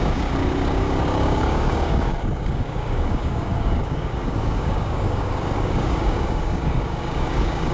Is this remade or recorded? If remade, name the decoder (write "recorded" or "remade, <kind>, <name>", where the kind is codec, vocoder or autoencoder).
remade, codec, DAC